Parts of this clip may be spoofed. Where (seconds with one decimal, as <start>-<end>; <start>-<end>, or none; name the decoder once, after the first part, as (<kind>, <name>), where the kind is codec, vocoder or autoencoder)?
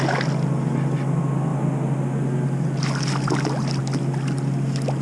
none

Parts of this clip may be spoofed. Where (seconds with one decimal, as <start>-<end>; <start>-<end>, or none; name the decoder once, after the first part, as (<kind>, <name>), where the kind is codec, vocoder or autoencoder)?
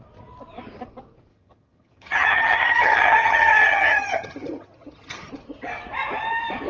1.3-5.3 (vocoder, HiFi-GAN)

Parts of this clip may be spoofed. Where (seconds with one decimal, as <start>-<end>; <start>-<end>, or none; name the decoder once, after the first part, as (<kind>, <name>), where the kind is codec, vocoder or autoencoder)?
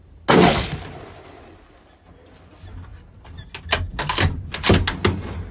none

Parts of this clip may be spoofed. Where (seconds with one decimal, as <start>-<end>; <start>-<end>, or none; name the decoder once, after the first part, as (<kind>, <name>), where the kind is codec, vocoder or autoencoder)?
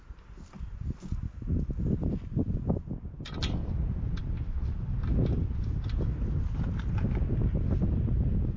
3.6-4.2 (vocoder, BigVGAN v2)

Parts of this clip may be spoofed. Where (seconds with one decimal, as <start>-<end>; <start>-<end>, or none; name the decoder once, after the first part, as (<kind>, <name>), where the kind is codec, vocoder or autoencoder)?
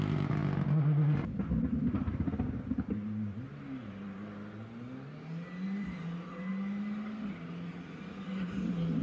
none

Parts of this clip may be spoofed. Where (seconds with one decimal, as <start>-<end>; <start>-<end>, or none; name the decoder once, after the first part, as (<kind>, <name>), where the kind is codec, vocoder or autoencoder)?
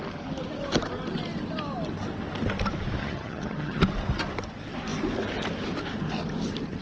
3.0-3.8 (vocoder, HiFi-GAN)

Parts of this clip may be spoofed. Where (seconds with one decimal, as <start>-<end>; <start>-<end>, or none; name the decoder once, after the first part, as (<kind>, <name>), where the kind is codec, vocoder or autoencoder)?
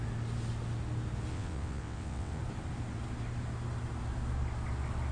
1.3-2.4 (vocoder, WaveNeXt)